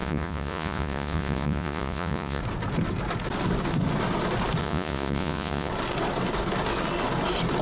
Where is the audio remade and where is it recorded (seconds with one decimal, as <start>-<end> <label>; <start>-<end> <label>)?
0.0-2.4 remade; 2.4-4.6 recorded; 4.6-5.7 remade; 5.7-7.6 recorded